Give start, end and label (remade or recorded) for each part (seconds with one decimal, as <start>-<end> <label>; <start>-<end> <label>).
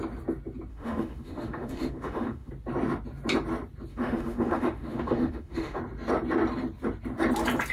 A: 0.0-0.7 recorded; 0.7-2.5 remade; 2.5-3.9 recorded; 3.9-5.8 remade; 5.8-7.7 recorded